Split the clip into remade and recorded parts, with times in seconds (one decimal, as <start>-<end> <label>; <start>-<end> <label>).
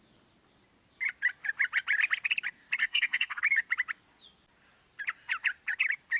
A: 0.0-2.8 recorded; 2.8-3.4 remade; 3.4-6.2 recorded